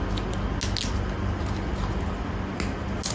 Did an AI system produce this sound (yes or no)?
no